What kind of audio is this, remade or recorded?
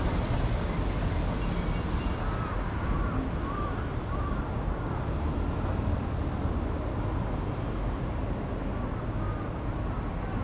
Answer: recorded